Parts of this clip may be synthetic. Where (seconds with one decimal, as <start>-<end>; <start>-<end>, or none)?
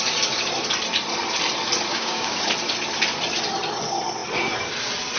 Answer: 1.9-2.4